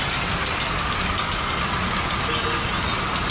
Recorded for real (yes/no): yes